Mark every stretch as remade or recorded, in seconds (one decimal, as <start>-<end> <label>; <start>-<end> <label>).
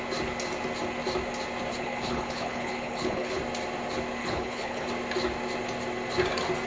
0.0-1.7 recorded; 1.7-3.4 remade; 3.4-4.2 recorded; 4.2-4.9 remade; 4.9-6.7 recorded